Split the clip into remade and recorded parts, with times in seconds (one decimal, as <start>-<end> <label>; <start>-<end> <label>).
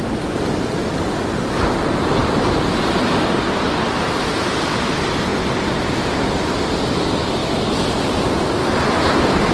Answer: 0.0-9.5 recorded